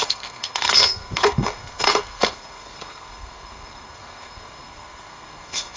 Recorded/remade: remade